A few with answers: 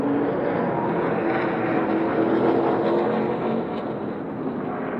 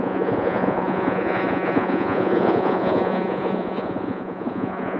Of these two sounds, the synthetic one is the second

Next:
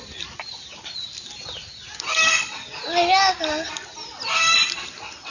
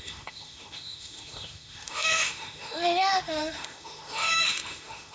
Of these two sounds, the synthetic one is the second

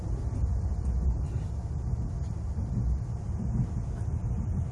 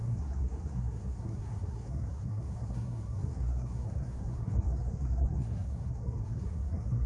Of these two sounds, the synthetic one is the second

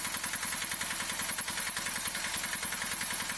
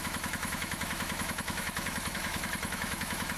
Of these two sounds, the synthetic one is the second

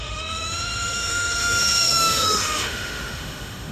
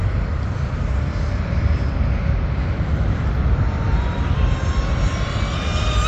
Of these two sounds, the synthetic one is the first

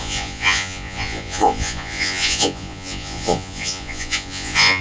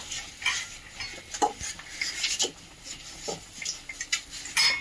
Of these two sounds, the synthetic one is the first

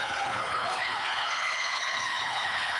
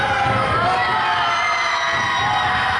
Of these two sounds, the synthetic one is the first